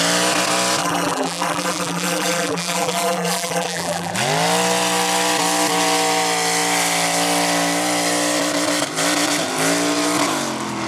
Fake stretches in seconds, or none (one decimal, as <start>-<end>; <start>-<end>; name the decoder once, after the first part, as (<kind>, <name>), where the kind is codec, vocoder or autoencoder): 0.8-4.1 (vocoder, BigVGAN v2)